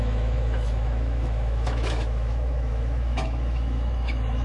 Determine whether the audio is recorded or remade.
remade